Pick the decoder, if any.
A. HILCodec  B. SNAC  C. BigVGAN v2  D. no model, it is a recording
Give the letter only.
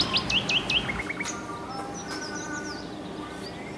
D